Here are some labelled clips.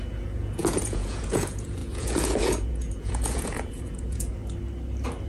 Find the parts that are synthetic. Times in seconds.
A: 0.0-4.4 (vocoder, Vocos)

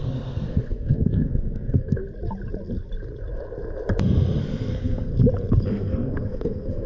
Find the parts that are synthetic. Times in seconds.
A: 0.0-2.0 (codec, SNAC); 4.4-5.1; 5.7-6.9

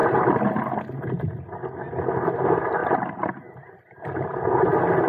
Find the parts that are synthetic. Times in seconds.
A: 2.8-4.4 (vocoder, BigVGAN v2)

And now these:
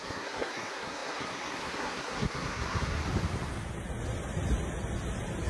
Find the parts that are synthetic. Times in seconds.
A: 0.0-3.0 (codec, SNAC)

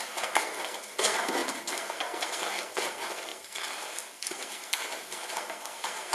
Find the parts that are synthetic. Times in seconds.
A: 0.0-6.1 (codec, SNAC)

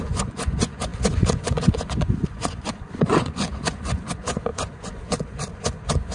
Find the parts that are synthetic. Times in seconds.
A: 0.0-6.1 (vocoder, Vocos)

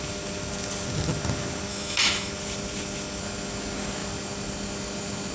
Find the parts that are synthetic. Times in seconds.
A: 1.7-2.3 (autoencoder, DAC-VAE)

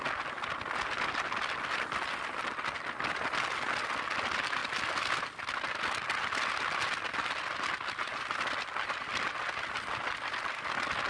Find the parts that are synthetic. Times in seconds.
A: none